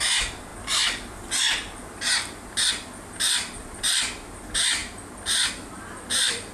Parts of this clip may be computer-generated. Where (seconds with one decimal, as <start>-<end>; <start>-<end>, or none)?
0.0-4.8; 5.5-6.5